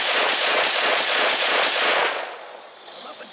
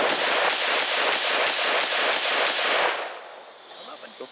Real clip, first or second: second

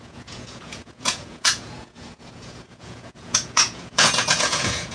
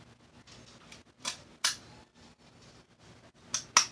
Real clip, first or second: second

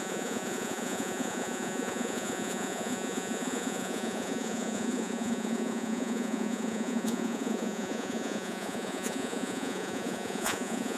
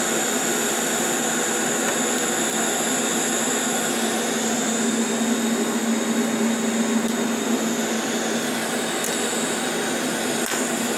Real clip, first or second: second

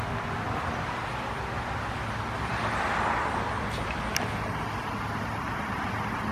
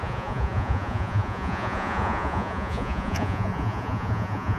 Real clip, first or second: first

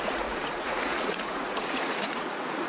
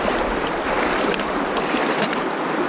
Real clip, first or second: second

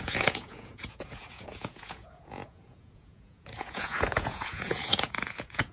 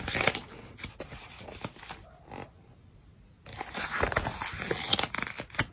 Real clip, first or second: second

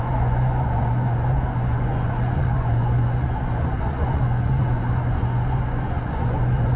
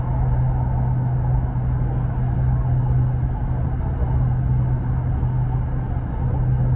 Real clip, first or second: second